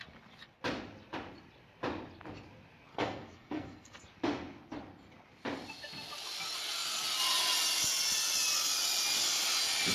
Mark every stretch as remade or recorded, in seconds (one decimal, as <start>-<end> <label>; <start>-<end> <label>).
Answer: 0.0-2.9 recorded; 2.9-4.0 remade; 4.0-9.9 recorded